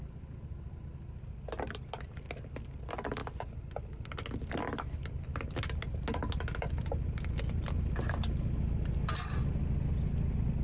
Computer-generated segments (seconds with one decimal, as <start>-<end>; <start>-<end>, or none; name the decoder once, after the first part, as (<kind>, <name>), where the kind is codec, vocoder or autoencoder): none